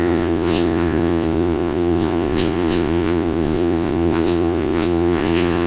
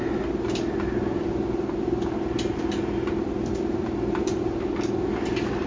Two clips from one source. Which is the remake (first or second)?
first